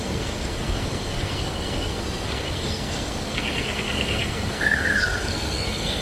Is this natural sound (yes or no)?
no